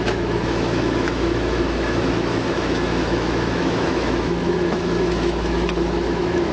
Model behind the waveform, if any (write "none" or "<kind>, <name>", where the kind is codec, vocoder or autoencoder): autoencoder, DAC-VAE